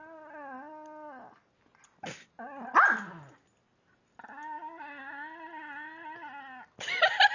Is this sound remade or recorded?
recorded